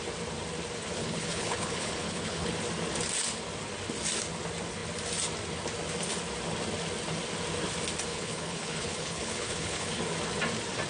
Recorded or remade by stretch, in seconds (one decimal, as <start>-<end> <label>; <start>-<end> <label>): 0.0-1.0 recorded; 1.0-2.5 remade; 2.5-8.1 recorded; 8.1-10.0 remade; 10.0-10.9 recorded

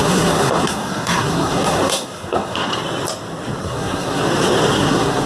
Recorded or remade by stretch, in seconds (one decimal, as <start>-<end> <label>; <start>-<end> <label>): 0.0-2.7 remade; 2.7-3.6 recorded; 3.6-4.2 remade; 4.2-4.7 recorded; 4.7-5.3 remade

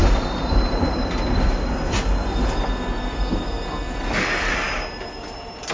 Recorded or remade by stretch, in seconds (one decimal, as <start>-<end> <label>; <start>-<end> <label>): 0.0-5.7 recorded

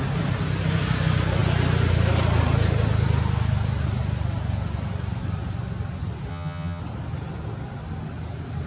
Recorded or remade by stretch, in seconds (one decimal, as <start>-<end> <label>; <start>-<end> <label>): 0.0-6.3 recorded; 6.3-6.8 remade; 6.8-8.7 recorded

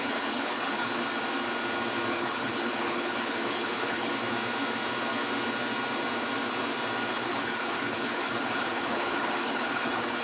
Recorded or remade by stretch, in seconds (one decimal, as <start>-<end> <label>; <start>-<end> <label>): 0.0-1.0 remade; 1.0-2.1 recorded; 2.1-4.1 remade; 4.1-7.1 recorded; 7.1-10.2 remade